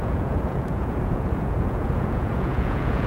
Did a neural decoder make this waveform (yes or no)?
yes